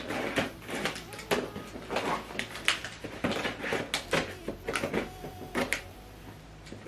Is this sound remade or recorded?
recorded